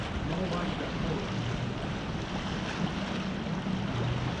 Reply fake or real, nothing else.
real